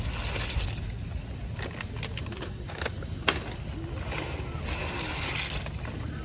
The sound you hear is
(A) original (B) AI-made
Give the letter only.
A